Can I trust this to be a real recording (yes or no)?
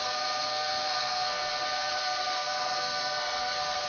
no